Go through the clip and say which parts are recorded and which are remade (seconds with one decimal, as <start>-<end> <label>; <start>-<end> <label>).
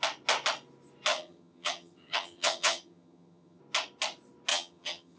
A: 0.0-1.1 recorded; 1.1-3.6 remade; 3.6-4.5 recorded; 4.5-5.2 remade